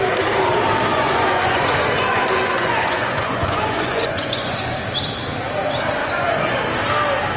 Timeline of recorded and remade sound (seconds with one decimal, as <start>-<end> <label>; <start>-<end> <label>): 0.0-0.9 recorded; 0.9-4.6 remade; 4.6-6.0 recorded; 6.0-6.6 remade; 6.6-7.4 recorded